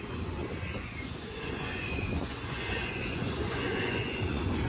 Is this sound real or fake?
fake